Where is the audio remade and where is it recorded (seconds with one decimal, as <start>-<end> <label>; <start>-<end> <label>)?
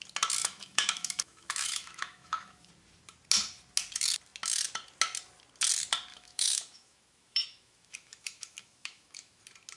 0.0-0.4 recorded; 0.4-2.7 remade; 2.7-6.1 recorded; 6.1-9.4 remade; 9.4-9.8 recorded